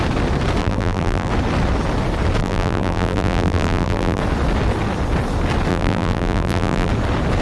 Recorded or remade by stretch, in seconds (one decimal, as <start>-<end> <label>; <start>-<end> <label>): 0.0-0.6 recorded; 0.6-1.3 remade; 1.3-2.4 recorded; 2.4-4.2 remade; 4.2-5.7 recorded; 5.7-6.9 remade; 6.9-7.4 recorded

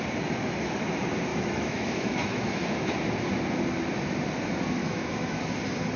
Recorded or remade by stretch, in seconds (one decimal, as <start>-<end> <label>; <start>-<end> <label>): 0.0-1.3 recorded; 1.3-3.1 remade; 3.1-4.8 recorded; 4.8-5.4 remade; 5.4-6.0 recorded

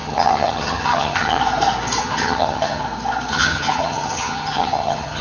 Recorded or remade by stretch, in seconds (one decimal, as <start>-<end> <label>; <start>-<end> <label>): 0.0-1.4 remade; 1.4-2.0 recorded; 2.0-2.8 remade; 2.8-3.3 recorded; 3.3-5.2 remade

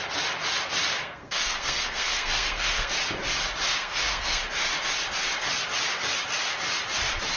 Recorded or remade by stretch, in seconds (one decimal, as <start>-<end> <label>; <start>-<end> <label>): 0.0-0.9 recorded; 0.9-2.9 remade; 2.9-3.7 recorded; 3.7-4.4 remade; 4.4-7.4 recorded

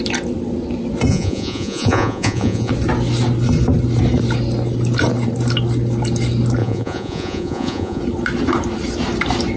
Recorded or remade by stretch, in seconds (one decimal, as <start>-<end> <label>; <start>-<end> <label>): 0.0-1.1 recorded; 1.1-2.7 remade; 2.7-6.6 recorded; 6.6-8.0 remade; 8.0-9.6 recorded

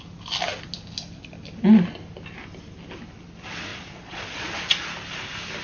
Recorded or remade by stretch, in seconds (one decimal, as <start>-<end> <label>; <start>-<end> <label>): 0.0-3.7 recorded; 3.7-4.5 remade; 4.5-5.6 recorded

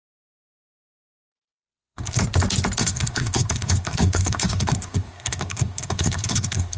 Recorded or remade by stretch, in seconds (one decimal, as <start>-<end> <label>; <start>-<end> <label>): 0.0-0.7 recorded; 0.7-2.2 remade; 2.2-2.8 recorded; 2.8-6.8 remade